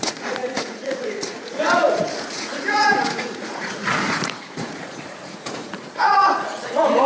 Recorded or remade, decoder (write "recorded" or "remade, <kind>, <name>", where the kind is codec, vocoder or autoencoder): remade, vocoder, Vocos